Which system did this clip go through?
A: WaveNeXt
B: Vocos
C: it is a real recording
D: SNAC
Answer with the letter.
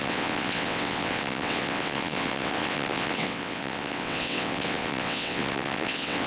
A